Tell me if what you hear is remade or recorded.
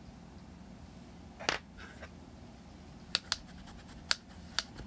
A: recorded